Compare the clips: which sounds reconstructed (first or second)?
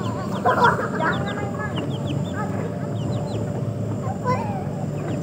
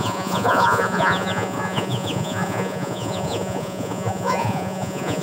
second